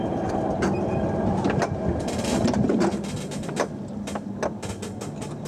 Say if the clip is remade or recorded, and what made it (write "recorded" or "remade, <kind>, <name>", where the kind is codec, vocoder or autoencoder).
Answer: recorded